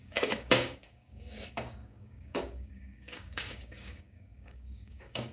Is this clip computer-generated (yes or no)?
yes